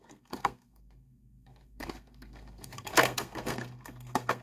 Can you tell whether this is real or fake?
fake